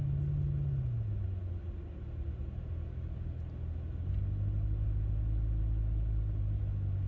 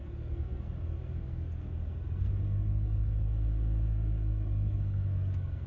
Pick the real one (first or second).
first